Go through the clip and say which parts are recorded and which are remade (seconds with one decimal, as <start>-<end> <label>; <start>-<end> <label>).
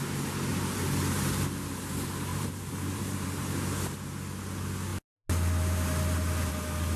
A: 0.0-2.3 recorded; 2.3-3.4 remade; 3.4-7.0 recorded